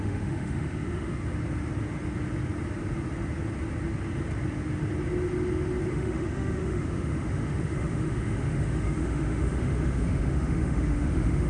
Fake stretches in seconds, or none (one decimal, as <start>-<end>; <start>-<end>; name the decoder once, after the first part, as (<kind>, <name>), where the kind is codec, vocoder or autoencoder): 0.0-1.2 (autoencoder, DAC-VAE); 5.9-11.5